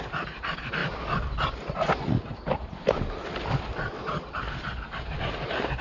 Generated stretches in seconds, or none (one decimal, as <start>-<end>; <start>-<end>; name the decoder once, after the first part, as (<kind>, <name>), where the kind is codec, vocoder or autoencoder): none